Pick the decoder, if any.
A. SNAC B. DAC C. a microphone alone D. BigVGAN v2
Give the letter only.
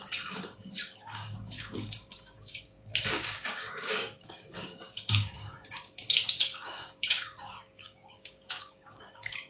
B